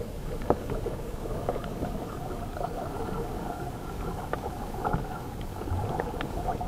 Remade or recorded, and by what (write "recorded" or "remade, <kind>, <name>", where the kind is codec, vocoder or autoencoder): remade, codec, DAC